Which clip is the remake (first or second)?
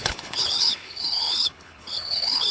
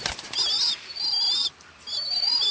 first